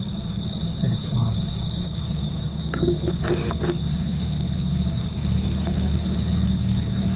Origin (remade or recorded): remade